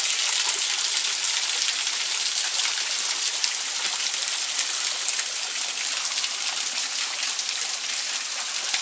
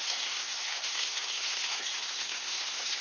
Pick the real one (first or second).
first